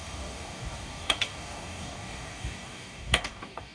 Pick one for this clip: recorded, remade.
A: remade